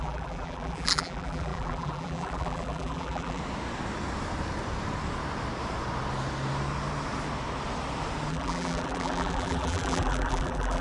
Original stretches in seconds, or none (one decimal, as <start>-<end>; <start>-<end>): 3.4-8.3